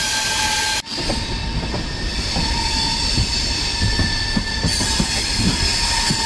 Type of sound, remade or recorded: recorded